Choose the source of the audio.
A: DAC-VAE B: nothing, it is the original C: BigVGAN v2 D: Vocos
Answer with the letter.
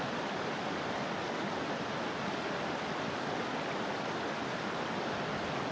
B